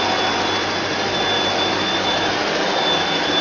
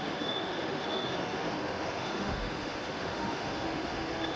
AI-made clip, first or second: second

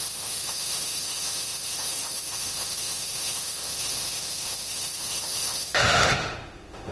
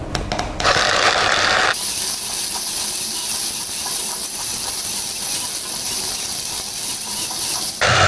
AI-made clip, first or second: first